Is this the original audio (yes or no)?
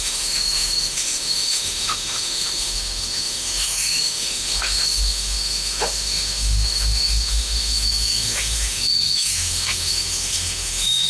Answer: no